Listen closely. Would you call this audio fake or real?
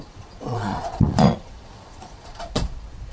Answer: fake